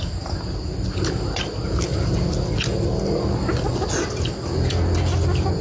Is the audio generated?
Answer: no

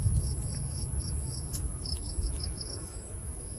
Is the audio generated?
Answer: yes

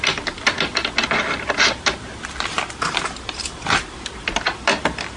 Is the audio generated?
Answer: no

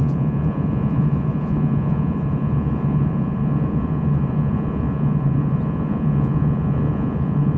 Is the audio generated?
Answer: yes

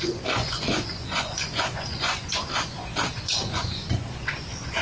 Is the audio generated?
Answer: yes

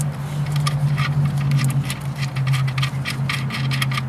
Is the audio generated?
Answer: no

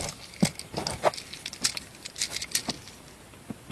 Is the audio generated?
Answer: no